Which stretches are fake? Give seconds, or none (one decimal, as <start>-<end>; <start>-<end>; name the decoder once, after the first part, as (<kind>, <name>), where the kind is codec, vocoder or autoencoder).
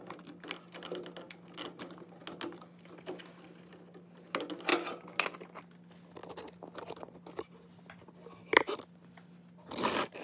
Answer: none